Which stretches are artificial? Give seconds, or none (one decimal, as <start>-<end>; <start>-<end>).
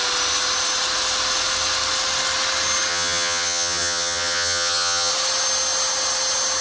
2.9-5.1